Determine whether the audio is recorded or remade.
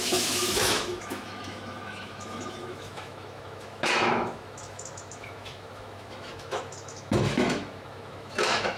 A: remade